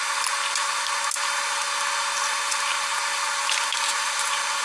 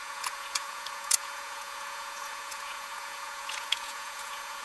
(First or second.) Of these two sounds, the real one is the first